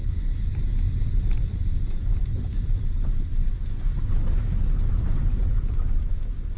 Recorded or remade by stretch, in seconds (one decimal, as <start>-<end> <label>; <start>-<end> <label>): 0.0-0.6 remade; 0.6-6.6 recorded